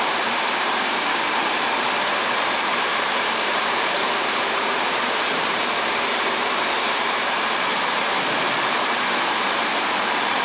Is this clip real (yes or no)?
no